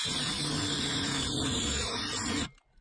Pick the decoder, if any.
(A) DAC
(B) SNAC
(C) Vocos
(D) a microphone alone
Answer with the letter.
D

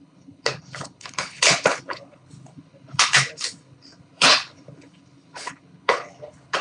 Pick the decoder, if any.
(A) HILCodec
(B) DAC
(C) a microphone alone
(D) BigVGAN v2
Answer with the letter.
A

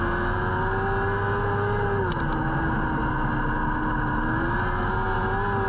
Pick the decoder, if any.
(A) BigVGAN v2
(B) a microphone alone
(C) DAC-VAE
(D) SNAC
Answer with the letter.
B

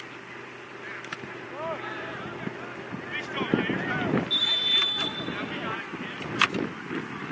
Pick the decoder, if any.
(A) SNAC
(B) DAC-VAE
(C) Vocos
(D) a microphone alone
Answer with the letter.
D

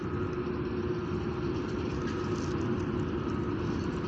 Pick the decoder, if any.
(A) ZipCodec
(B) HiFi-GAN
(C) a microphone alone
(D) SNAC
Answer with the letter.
C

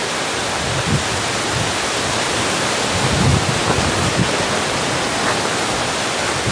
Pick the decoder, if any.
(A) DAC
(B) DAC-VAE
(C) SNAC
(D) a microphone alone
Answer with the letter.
D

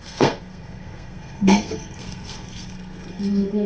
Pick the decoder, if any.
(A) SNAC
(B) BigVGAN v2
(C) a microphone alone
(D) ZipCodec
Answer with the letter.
A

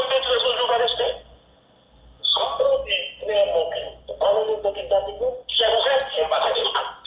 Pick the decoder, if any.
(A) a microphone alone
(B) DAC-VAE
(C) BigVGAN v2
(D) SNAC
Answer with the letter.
A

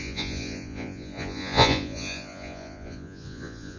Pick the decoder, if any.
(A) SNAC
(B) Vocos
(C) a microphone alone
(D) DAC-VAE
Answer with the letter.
B